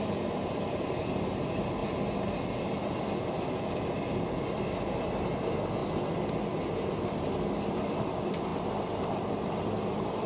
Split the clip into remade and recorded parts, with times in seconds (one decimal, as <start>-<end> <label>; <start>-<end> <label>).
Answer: 0.0-1.8 remade; 1.8-3.2 recorded; 3.2-5.8 remade; 5.8-7.7 recorded; 7.7-10.3 remade